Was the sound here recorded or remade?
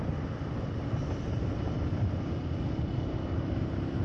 recorded